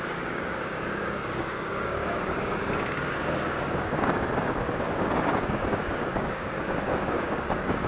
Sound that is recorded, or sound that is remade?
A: remade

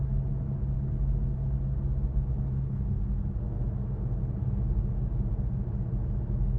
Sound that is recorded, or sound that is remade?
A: recorded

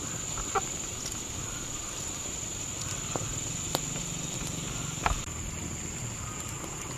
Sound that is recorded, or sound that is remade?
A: recorded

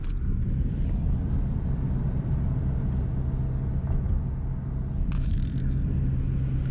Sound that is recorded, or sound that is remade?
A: recorded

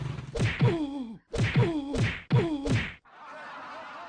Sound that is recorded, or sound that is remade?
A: recorded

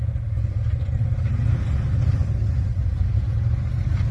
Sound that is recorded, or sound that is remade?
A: recorded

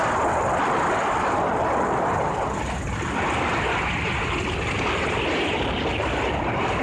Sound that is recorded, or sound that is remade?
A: recorded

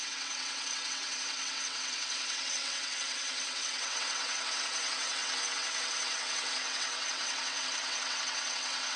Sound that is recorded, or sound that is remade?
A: remade